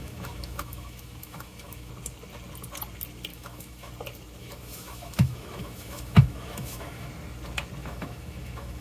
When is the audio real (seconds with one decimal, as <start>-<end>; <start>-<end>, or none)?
1.9-3.3; 3.9-4.4; 7.1-7.8